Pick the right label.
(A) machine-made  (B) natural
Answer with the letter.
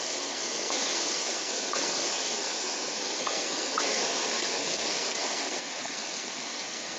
A